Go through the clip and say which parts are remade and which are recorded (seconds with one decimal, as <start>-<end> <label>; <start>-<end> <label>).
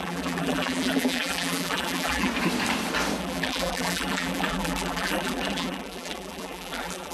0.0-2.3 remade; 2.3-3.2 recorded; 3.2-7.1 remade